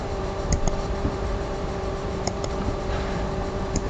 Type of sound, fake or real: fake